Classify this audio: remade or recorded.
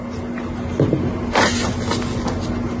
recorded